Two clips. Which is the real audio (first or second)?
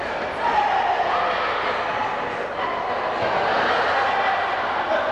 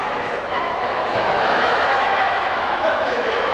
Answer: first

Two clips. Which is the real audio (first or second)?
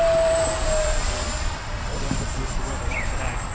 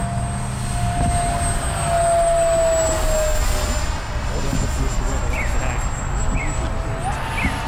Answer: second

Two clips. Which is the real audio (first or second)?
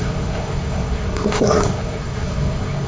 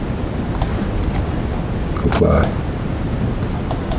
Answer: second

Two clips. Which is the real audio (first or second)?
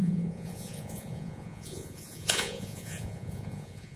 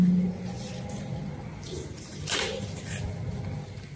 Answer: second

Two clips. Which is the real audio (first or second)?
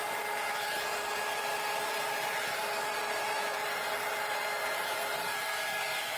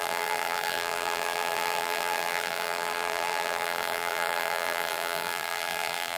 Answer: first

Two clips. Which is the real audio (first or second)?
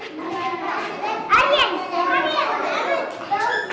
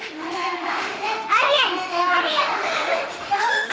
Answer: first